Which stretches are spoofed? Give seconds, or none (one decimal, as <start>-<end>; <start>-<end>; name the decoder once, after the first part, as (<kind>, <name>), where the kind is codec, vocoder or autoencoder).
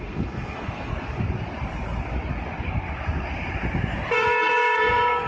0.0-0.9 (codec, SNAC); 4.1-5.3